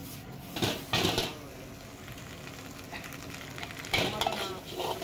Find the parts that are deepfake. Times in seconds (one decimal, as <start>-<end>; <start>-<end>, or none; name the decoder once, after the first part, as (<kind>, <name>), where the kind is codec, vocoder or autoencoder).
none